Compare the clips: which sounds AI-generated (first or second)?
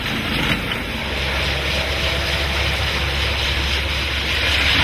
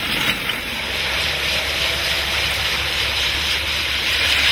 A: second